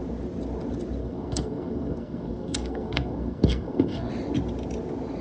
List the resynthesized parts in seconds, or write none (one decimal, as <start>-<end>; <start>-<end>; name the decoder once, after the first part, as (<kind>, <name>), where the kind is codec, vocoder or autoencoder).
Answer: 1.0-4.1 (codec, SNAC)